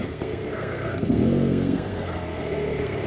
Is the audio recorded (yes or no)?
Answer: no